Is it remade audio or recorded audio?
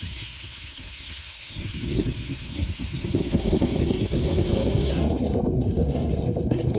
remade